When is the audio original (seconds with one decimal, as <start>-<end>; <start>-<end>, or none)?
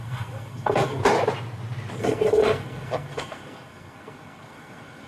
1.0-2.0